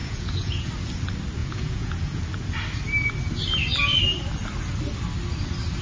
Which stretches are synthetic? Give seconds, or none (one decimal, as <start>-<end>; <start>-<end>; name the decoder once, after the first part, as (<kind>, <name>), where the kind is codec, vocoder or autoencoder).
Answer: 0.0-0.7 (vocoder, Vocos); 1.4-2.2

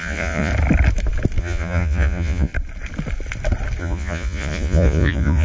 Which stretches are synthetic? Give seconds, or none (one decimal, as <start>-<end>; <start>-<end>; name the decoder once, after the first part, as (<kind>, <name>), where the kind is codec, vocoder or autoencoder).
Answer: 0.0-0.5 (vocoder, Vocos); 1.4-2.5; 3.8-5.4

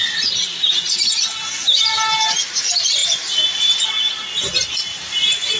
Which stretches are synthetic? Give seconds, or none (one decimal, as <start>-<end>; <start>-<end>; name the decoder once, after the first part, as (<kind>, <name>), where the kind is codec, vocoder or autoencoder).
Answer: 4.9-5.6 (vocoder, BigVGAN v2)

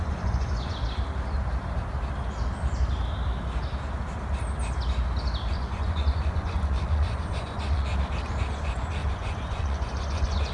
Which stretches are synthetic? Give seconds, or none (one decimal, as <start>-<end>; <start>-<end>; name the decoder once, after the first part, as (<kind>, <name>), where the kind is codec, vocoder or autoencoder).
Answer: 0.0-0.8 (vocoder, Vocos); 5.5-7.9; 8.5-10.5

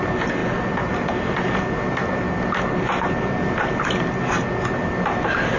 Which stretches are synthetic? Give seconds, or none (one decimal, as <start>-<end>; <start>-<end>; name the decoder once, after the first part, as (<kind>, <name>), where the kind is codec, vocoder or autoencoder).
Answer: none

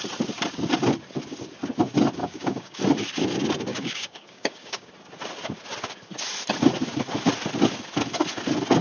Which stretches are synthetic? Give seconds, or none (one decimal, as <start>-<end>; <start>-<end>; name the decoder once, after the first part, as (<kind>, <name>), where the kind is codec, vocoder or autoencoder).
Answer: 2.2-2.8 (codec, DAC); 3.7-4.9

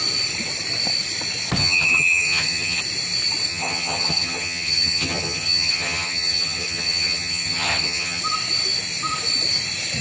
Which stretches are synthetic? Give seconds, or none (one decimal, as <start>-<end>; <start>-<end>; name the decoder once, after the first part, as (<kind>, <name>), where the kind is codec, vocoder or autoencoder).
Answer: 1.6-2.8 (vocoder, HiFi-GAN); 3.5-8.2

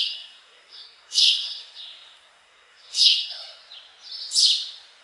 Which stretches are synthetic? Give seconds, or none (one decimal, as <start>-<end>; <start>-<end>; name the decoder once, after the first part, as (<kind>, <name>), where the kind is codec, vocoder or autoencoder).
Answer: 0.0-3.6 (codec, SNAC)